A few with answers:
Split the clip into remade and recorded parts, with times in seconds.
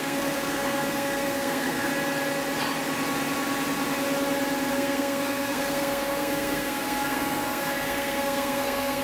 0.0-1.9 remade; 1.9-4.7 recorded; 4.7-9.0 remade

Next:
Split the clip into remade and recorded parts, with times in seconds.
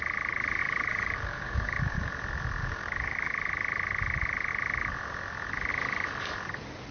0.0-0.6 recorded; 0.6-2.1 remade; 2.1-2.6 recorded; 2.6-3.3 remade; 3.3-6.9 recorded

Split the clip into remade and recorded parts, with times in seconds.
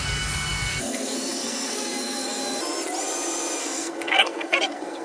0.0-2.4 remade; 2.4-3.6 recorded; 3.6-5.0 remade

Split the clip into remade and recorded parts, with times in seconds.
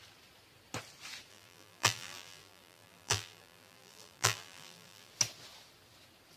0.0-1.3 recorded; 1.3-5.1 remade; 5.1-6.4 recorded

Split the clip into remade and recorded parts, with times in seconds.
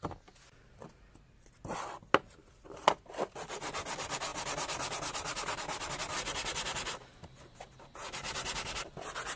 0.0-9.4 recorded